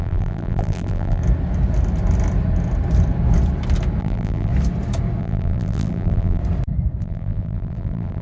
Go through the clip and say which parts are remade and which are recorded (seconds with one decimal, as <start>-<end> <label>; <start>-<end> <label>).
0.0-1.2 remade; 1.2-4.0 recorded; 4.0-4.5 remade; 4.5-5.2 recorded; 5.2-6.4 remade; 6.4-7.0 recorded; 7.0-8.2 remade